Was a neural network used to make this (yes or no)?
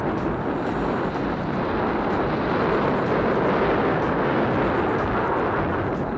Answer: no